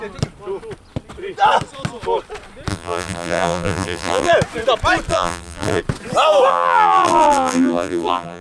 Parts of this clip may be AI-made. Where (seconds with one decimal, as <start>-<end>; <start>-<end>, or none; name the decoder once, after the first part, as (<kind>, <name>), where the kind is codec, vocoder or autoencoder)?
2.7-4.3 (vocoder, BigVGAN v2); 5.1-5.8; 6.5-8.4